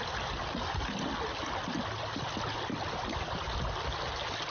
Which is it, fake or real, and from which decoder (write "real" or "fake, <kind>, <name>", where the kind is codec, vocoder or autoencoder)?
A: real